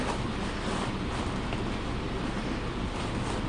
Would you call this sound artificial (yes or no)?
yes